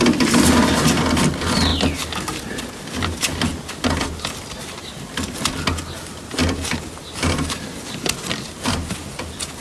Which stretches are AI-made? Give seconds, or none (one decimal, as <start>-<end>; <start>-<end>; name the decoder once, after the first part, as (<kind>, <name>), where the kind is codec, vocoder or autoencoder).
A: none

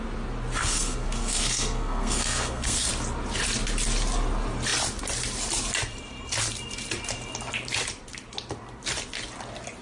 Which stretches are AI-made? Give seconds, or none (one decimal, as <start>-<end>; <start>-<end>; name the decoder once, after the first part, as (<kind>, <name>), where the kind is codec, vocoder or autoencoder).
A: 0.6-2.9 (codec, SNAC)

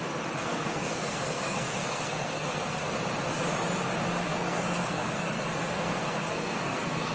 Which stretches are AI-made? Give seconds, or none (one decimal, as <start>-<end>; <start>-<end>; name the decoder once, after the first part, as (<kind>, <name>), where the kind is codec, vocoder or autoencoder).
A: 0.4-2.8 (codec, SNAC); 4.3-7.1

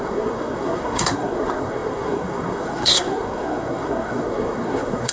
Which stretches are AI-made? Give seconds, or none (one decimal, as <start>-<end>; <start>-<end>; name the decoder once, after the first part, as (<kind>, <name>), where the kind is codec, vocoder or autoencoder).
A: 0.0-5.1 (codec, SNAC)

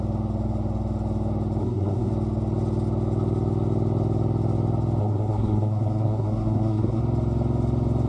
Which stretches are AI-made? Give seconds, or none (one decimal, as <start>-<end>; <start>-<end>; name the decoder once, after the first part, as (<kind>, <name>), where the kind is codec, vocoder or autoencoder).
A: 1.6-2.1 (codec, SNAC); 5.0-7.0

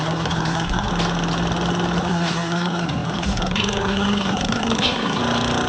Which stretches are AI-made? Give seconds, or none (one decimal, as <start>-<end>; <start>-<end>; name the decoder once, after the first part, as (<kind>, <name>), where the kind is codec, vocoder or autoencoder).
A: 0.0-0.9 (codec, SNAC); 2.0-5.2

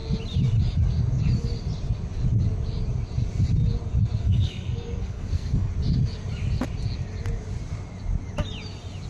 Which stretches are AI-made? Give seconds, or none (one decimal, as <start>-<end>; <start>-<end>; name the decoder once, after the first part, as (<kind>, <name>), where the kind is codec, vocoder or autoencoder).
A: 4.2-5.7 (codec, SNAC)